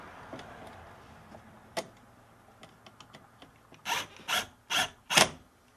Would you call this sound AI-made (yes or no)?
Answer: no